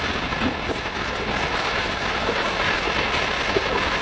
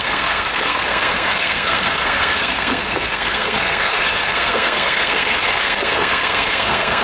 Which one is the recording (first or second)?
first